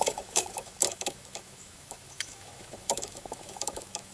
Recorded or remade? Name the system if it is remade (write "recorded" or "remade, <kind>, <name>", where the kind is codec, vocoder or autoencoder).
remade, autoencoder, DAC-VAE